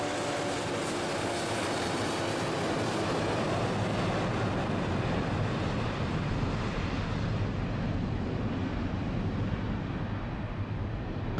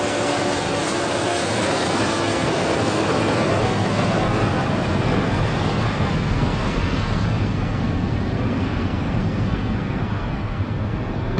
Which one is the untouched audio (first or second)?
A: first